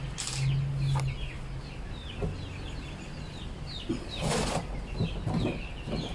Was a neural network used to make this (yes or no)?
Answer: no